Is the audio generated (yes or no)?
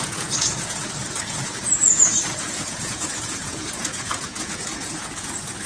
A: yes